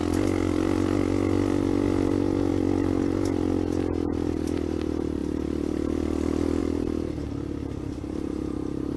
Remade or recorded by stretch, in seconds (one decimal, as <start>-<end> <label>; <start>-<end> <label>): 0.0-9.0 recorded